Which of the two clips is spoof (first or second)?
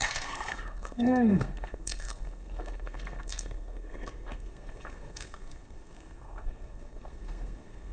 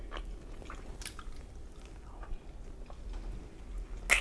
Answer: first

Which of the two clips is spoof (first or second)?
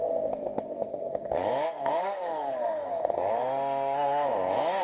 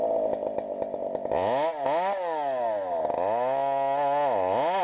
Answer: first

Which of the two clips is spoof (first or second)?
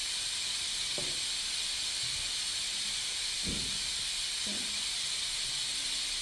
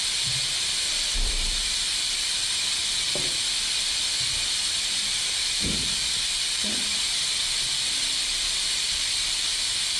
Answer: second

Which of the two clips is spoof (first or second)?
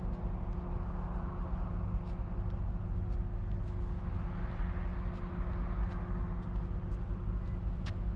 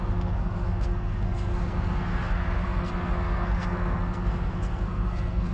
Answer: second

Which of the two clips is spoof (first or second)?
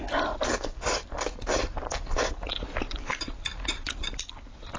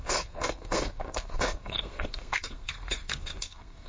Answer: second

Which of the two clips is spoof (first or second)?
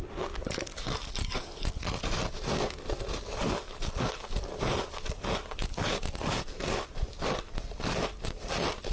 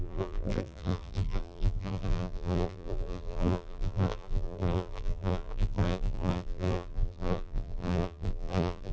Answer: second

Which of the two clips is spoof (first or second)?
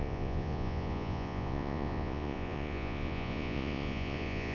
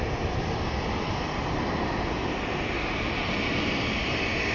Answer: first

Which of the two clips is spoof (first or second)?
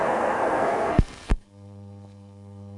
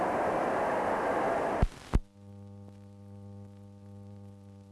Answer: first